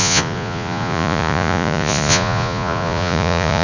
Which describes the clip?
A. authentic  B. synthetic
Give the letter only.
B